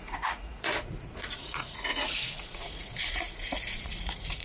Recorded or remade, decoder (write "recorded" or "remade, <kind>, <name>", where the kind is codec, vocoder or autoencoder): remade, vocoder, Vocos